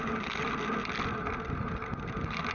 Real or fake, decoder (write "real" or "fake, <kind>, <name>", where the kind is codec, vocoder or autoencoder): real